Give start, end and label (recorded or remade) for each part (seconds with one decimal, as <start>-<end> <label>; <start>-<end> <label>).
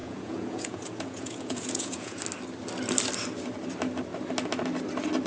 0.0-2.2 remade; 2.2-5.3 recorded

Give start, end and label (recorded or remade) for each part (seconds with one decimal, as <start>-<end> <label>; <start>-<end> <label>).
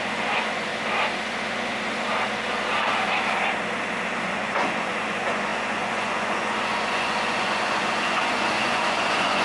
0.0-0.7 remade; 0.7-4.2 recorded; 4.2-9.4 remade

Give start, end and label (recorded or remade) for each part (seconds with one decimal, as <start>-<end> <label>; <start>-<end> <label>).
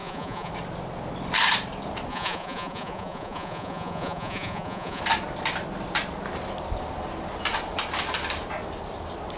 0.0-0.5 remade; 0.5-2.1 recorded; 2.1-5.0 remade; 5.0-9.4 recorded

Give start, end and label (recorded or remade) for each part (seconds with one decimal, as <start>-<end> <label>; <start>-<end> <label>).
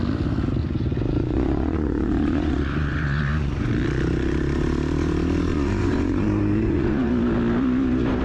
0.0-0.6 recorded; 0.6-3.7 remade; 3.7-5.5 recorded; 5.5-7.1 remade; 7.1-8.2 recorded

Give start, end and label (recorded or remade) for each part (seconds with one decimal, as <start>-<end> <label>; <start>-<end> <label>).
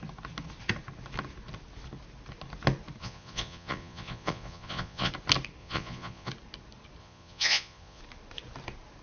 0.0-3.0 recorded; 3.0-5.1 remade; 5.1-5.6 recorded; 5.6-6.3 remade; 6.3-7.0 recorded; 7.0-8.0 remade; 8.0-9.0 recorded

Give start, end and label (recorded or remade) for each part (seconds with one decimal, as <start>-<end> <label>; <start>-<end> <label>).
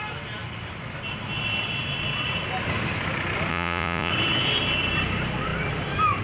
0.0-3.5 recorded; 3.5-4.1 remade; 4.1-6.2 recorded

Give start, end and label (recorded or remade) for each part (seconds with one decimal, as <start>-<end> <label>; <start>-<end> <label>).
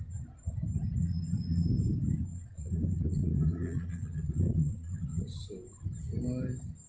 0.0-1.0 recorded; 1.0-1.7 remade; 1.7-2.3 recorded; 2.3-5.2 remade; 5.2-6.9 recorded